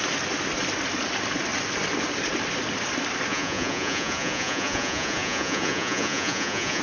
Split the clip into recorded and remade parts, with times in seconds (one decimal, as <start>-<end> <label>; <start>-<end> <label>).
0.0-3.3 recorded; 3.3-6.8 remade